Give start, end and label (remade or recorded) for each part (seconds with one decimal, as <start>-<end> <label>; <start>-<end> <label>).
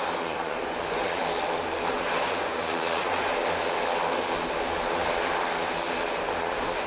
0.0-1.2 remade; 1.2-1.9 recorded; 1.9-3.3 remade; 3.3-6.1 recorded; 6.1-6.9 remade